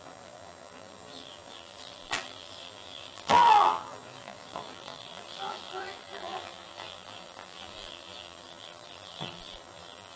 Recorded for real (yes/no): no